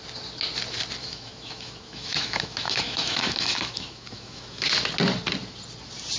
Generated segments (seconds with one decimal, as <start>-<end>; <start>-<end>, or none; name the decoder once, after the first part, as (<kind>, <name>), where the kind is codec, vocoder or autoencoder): 1.0-4.7 (autoencoder, DAC-VAE)

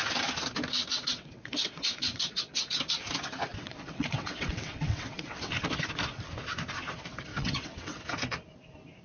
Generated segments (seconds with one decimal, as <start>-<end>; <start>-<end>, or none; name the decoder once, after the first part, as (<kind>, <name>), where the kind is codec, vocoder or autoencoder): 1.0-2.4 (vocoder, WaveNeXt); 3.5-5.5; 7.3-8.0

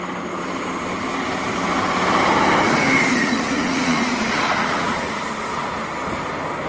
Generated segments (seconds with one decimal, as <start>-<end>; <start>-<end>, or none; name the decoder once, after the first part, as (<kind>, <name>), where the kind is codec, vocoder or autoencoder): 3.2-5.3 (vocoder, Vocos)